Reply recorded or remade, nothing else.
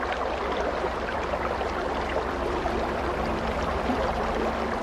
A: remade